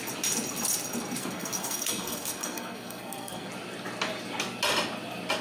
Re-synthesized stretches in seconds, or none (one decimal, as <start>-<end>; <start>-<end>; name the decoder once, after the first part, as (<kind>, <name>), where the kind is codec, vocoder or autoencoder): 1.2-3.5 (codec, SNAC)